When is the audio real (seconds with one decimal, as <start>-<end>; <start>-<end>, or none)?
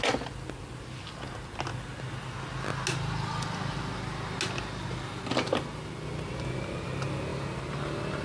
0.0-8.2